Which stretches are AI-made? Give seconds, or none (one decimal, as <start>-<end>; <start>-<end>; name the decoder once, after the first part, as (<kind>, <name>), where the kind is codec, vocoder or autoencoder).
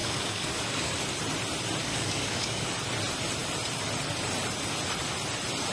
0.0-1.0 (codec, DAC); 1.8-2.7